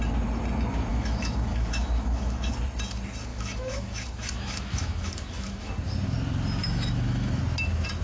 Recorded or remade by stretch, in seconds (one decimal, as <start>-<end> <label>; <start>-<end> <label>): 0.0-0.9 recorded; 0.9-2.5 remade; 2.5-3.3 recorded; 3.3-5.7 remade; 5.7-6.6 recorded; 6.6-7.4 remade; 7.4-8.0 recorded